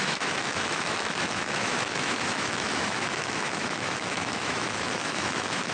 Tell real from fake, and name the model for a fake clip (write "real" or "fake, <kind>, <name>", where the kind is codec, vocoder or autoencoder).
fake, autoencoder, DAC-VAE